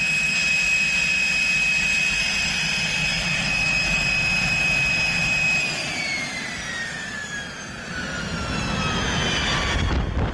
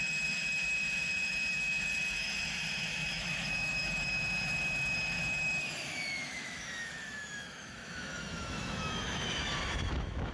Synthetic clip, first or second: second